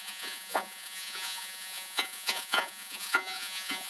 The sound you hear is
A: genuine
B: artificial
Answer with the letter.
B